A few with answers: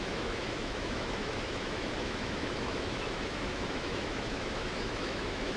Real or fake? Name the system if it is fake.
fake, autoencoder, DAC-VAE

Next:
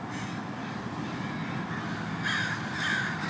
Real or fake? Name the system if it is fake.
real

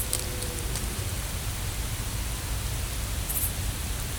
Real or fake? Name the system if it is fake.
real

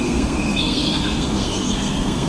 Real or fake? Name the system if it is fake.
fake, codec, SNAC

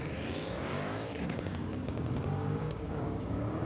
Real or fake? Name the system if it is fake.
fake, codec, DAC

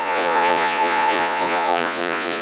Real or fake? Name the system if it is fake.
fake, vocoder, Vocos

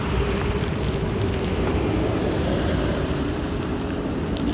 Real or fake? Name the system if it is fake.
real